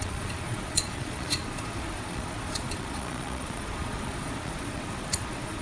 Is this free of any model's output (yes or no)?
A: no